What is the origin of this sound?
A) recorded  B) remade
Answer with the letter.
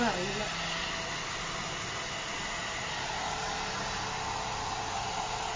A